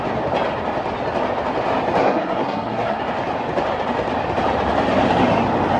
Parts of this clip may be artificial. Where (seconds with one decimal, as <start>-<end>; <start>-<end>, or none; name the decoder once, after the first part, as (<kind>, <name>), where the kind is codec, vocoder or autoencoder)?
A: 2.0-3.0 (codec, SNAC)